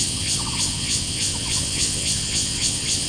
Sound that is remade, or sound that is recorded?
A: remade